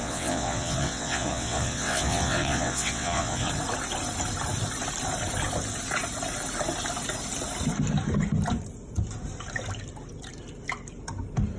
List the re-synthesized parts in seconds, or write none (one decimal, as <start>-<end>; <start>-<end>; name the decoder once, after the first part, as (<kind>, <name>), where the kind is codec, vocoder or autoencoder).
0.0-3.5 (vocoder, WaveNeXt)